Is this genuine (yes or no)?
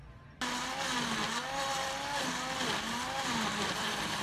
yes